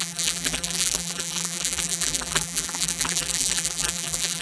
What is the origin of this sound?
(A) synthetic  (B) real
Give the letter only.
A